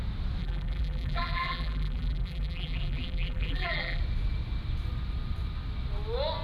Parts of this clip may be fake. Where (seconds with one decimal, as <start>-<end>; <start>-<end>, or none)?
0.4-4.0